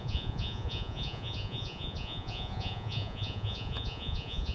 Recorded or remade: remade